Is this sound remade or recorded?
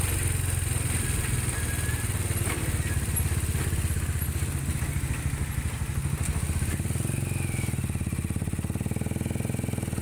recorded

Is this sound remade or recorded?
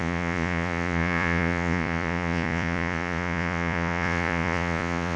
remade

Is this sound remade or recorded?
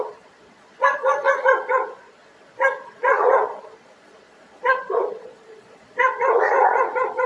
remade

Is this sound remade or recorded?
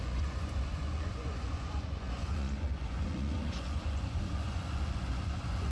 remade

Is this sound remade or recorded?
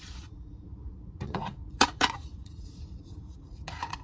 remade